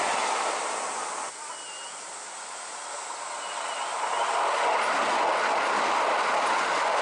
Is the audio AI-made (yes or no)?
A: no